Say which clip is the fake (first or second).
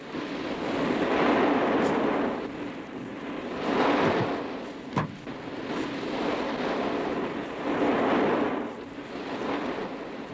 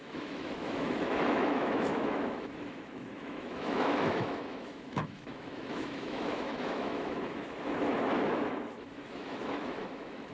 second